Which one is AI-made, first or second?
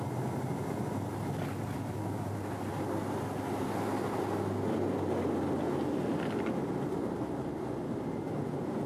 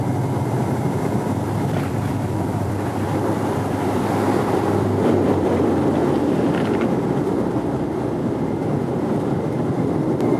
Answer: second